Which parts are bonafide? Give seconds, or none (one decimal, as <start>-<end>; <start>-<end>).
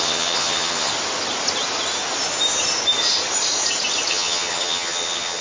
0.9-4.1